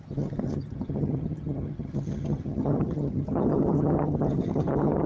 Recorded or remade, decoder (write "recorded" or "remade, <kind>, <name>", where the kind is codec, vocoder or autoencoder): remade, vocoder, HiFi-GAN